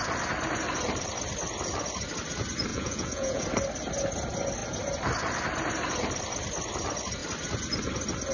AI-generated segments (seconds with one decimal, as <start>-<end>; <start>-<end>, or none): 2.7-3.4